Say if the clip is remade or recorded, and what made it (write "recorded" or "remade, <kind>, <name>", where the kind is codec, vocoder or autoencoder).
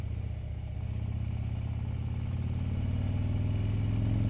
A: recorded